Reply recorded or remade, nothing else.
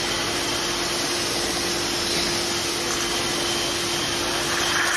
recorded